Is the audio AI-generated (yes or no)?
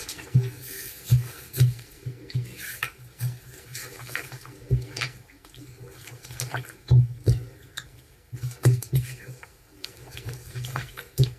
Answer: yes